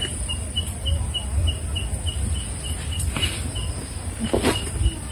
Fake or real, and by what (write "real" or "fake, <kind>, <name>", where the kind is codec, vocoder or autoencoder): real